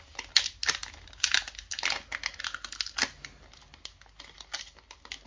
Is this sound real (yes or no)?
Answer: yes